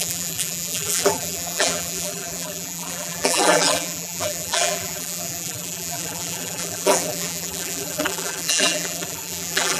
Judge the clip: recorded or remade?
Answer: remade